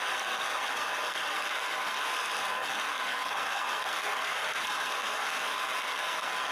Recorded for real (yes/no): no